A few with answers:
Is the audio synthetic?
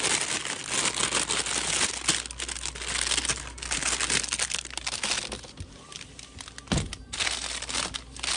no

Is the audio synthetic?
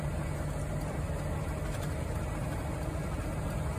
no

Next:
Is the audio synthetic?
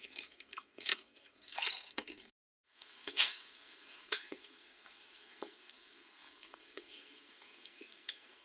yes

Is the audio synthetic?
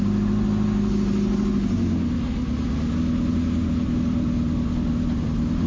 no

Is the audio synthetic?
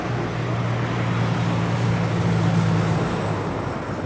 no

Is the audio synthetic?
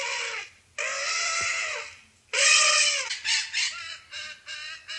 no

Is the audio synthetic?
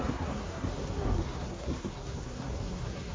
yes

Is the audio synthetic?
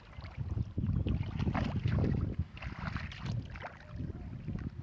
no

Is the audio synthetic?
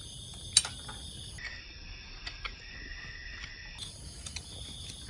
no